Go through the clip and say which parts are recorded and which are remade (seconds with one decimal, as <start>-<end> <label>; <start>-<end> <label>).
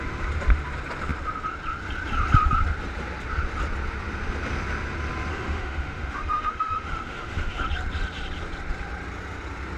0.0-5.3 recorded; 5.3-7.6 remade; 7.6-9.8 recorded